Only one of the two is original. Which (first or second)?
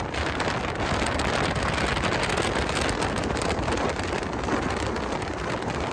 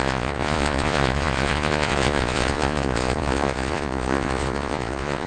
first